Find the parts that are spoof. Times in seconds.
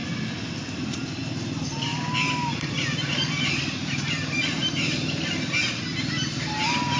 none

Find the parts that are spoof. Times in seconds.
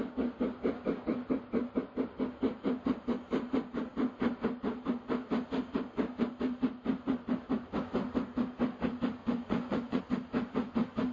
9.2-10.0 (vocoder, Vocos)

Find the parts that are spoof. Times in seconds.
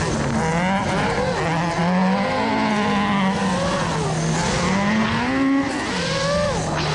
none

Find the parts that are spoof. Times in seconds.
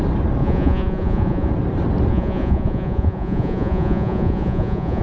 0.4-1.5 (vocoder, Vocos); 2.1-5.0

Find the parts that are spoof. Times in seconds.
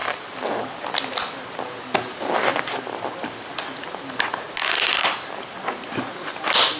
2.5-6.3 (vocoder, BigVGAN v2)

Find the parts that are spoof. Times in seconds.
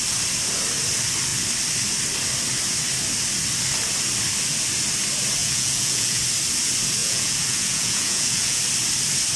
5.4-6.2 (vocoder, Vocos); 7.0-8.6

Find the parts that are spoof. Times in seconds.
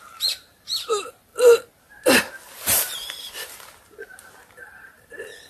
none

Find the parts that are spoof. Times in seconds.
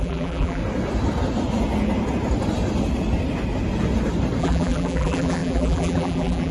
0.0-0.6 (vocoder, BigVGAN v2); 4.4-6.5